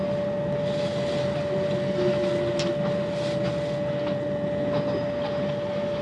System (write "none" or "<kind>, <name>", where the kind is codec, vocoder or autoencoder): none